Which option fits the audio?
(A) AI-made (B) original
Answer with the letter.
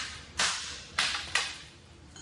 A